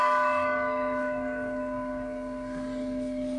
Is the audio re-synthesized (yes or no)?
yes